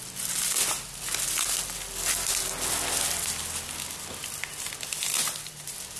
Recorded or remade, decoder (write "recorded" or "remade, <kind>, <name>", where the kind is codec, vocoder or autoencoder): recorded